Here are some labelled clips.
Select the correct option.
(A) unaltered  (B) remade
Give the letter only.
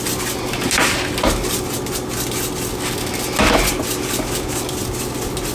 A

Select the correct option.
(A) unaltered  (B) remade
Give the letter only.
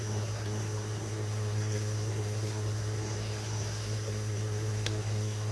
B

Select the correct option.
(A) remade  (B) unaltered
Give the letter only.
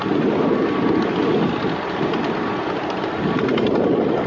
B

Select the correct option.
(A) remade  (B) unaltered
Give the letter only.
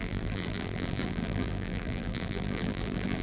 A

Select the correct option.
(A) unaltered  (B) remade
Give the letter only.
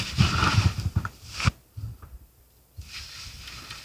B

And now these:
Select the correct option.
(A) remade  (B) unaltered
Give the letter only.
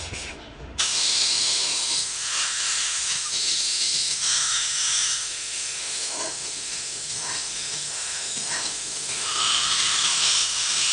A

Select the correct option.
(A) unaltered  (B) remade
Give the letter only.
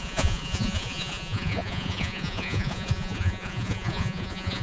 B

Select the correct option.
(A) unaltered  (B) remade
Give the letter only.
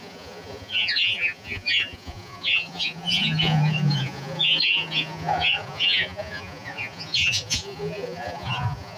B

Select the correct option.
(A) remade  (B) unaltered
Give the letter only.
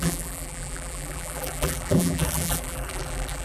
A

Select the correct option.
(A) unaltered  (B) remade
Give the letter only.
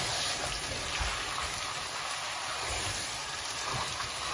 A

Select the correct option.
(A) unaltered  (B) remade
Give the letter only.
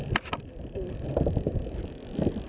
A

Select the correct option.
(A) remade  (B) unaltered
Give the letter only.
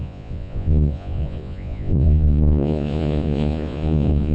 A